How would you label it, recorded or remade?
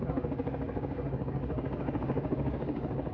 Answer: remade